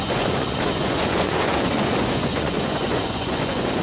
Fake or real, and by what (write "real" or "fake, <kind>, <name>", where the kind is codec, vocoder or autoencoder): fake, vocoder, Vocos